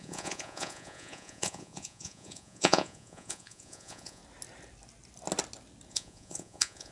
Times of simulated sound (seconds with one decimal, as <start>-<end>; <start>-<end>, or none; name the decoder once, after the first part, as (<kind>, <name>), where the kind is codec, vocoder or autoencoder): 0.0-4.2 (vocoder, Vocos); 5.9-6.9